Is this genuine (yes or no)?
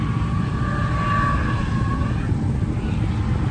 yes